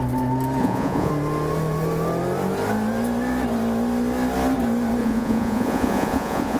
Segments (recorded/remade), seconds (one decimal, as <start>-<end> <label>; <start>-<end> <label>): 0.0-0.6 recorded; 0.6-1.1 remade; 1.1-5.0 recorded; 5.0-6.6 remade